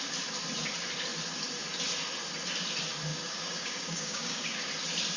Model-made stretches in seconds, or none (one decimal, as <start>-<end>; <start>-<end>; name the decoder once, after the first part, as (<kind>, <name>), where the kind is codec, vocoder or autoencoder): 3.1-4.7 (codec, DAC)

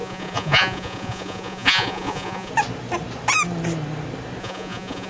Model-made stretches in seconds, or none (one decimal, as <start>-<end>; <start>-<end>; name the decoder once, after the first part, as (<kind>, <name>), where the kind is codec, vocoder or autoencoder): 0.0-2.5 (vocoder, Vocos); 4.4-5.1

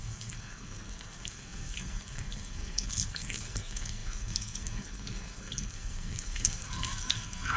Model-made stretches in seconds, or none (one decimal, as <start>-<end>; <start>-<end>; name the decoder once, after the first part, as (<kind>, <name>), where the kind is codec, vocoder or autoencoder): 0.0-7.6 (codec, SNAC)

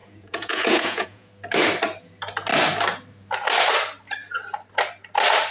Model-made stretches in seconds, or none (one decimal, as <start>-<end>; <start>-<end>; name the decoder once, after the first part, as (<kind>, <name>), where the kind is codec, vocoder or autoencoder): 0.0-1.3 (vocoder, Vocos)

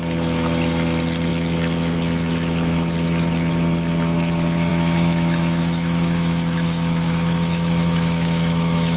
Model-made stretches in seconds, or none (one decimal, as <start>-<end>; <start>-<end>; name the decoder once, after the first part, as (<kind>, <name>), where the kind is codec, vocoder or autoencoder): 4.7-9.0 (autoencoder, DAC-VAE)

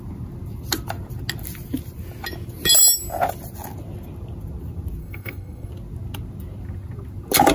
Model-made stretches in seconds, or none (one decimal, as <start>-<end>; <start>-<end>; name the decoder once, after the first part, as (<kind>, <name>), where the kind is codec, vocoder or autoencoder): 5.0-5.7 (codec, SNAC)